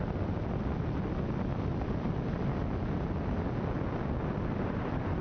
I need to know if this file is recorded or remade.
recorded